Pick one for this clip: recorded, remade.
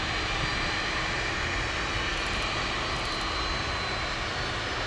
recorded